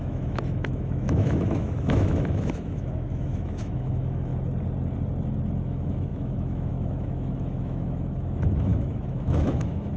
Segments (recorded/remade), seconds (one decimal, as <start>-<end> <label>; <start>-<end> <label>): 0.0-4.3 remade; 4.3-5.6 recorded; 5.6-10.0 remade